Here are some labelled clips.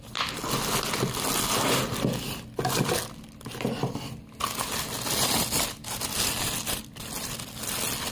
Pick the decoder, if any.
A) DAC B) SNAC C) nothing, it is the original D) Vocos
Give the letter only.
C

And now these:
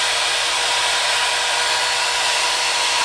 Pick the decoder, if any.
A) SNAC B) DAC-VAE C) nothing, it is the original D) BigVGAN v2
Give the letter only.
C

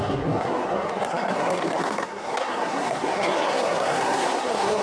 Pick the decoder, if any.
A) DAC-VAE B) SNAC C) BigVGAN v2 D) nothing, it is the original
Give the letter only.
B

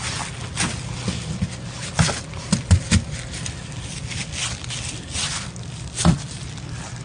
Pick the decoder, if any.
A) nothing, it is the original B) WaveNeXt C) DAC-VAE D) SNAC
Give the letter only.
A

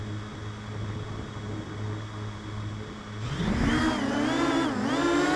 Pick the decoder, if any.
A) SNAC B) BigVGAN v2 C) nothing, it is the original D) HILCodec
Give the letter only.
C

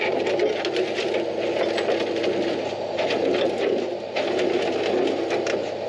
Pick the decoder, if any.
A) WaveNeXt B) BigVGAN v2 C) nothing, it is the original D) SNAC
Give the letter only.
C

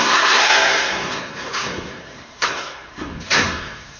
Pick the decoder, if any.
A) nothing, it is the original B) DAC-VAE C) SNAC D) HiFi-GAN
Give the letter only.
C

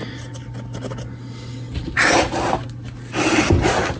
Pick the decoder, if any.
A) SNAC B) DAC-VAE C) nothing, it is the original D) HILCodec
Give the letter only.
C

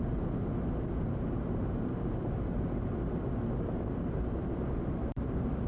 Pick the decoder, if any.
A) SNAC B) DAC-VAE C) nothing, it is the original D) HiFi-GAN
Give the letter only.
C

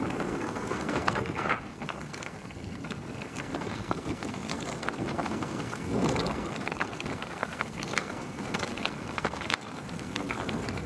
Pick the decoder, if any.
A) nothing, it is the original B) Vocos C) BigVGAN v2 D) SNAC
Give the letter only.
D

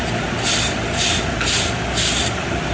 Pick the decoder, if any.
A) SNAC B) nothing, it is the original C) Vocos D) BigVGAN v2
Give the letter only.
B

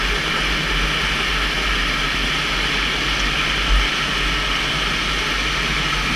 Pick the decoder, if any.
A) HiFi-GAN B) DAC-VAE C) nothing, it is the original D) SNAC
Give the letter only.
C